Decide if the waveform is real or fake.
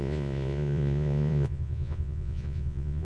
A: fake